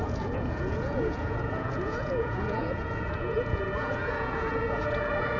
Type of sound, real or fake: fake